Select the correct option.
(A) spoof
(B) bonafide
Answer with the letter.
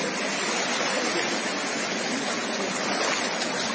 B